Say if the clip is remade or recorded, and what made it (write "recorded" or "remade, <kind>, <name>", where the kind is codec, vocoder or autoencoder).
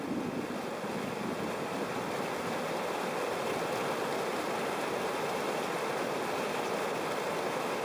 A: recorded